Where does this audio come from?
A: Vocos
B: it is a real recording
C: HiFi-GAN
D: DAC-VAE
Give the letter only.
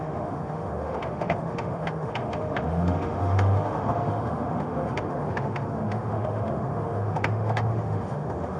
D